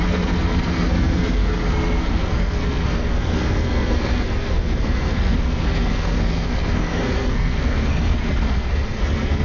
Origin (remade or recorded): remade